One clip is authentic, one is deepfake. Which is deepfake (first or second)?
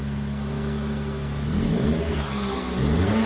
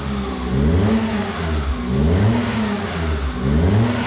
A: first